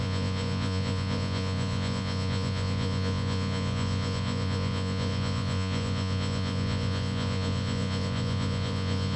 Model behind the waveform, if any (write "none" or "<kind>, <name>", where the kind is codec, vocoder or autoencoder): vocoder, Vocos